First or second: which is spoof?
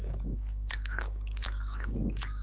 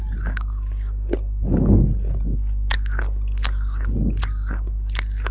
first